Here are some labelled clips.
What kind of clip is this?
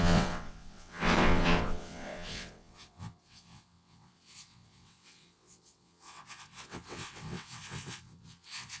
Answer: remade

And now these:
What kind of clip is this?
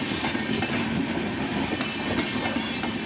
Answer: recorded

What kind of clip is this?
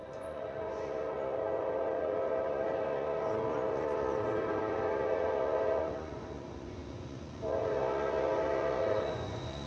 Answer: remade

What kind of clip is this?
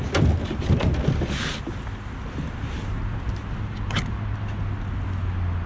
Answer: recorded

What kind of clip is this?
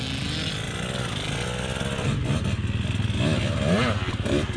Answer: recorded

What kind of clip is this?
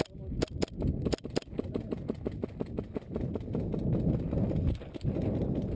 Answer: recorded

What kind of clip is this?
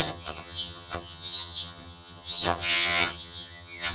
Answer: remade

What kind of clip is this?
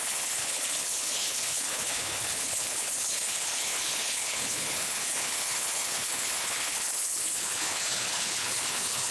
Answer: remade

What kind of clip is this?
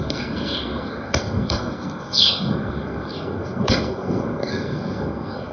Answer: remade